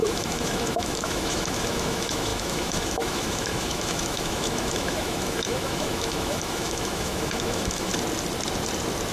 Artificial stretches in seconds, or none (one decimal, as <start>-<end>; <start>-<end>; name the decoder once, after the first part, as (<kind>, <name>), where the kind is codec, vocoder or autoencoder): 0.0-7.9 (autoencoder, DAC-VAE)